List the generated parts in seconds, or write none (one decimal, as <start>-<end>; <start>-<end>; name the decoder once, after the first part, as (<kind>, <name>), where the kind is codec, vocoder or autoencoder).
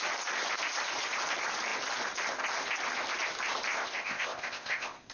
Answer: 3.8-5.1 (codec, ZipCodec)